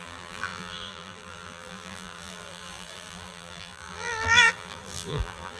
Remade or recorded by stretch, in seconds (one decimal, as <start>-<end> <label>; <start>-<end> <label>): 0.0-5.6 remade